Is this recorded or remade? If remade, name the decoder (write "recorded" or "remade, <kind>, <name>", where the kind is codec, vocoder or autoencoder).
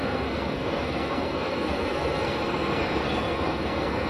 remade, codec, SNAC